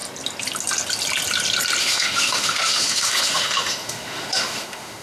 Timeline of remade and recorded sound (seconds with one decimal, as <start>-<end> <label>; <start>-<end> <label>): 0.0-1.8 recorded; 1.8-5.0 remade